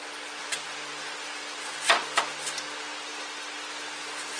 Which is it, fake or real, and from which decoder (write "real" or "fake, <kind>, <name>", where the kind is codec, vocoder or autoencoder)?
real